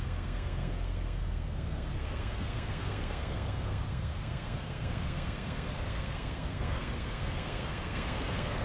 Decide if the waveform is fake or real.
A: fake